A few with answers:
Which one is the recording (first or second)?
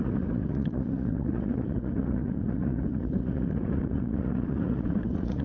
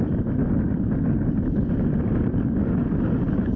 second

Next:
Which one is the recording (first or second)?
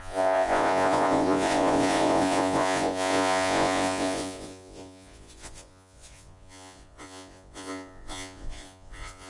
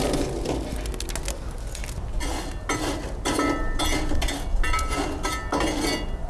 second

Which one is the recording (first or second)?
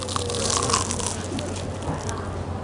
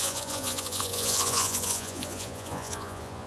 first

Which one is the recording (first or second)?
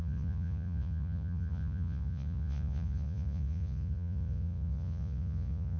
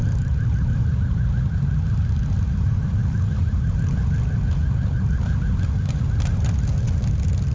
second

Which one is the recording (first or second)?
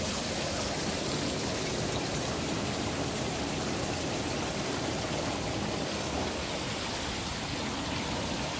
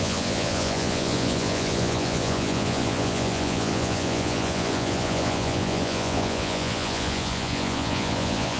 first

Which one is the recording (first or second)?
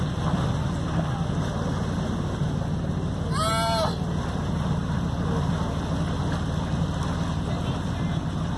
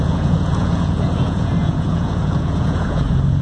first